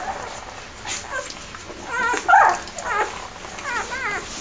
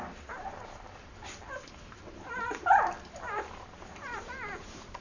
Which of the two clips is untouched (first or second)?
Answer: first